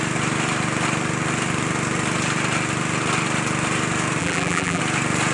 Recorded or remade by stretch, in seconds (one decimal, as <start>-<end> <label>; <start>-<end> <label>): 0.0-4.2 recorded; 4.2-4.8 remade; 4.8-5.3 recorded